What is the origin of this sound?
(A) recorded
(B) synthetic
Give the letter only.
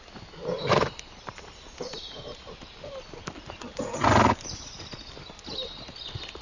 A